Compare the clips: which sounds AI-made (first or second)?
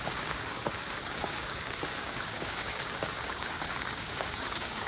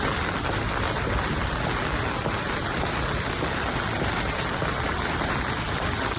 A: first